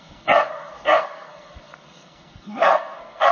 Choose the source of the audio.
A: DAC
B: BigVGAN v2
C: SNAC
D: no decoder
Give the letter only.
C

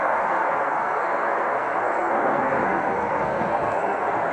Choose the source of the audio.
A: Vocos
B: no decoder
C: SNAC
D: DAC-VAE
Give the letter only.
C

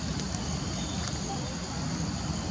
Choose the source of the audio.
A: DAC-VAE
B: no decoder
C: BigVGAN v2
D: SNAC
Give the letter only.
B